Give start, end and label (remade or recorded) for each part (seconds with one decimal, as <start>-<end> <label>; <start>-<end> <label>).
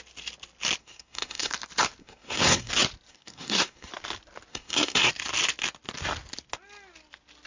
0.0-0.8 recorded; 0.8-1.5 remade; 1.5-2.0 recorded; 2.0-2.7 remade; 2.7-3.1 recorded; 3.1-3.9 remade; 3.9-4.5 recorded; 4.5-5.1 remade; 5.1-7.5 recorded